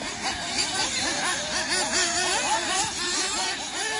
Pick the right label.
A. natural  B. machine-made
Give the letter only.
A